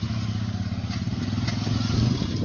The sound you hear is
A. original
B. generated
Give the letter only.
A